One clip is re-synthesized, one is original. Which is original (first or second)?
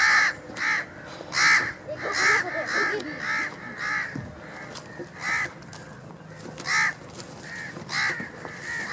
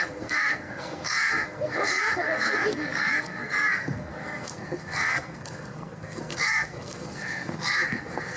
first